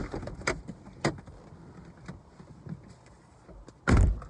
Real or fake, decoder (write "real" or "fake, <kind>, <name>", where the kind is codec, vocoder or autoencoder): real